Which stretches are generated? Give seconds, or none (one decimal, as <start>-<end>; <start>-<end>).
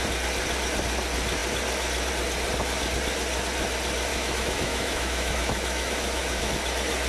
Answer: 4.1-6.5